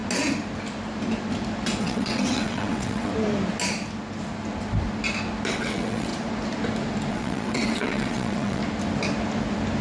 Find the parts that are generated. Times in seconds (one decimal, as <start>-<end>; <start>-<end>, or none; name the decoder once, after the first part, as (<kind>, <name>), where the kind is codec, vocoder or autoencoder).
1.8-3.1 (vocoder, WaveNeXt); 5.5-6.1; 7.1-8.6